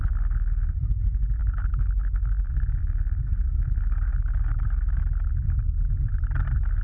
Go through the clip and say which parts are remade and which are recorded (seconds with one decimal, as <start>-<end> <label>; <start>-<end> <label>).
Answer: 0.0-1.4 recorded; 1.4-2.8 remade; 2.8-6.8 recorded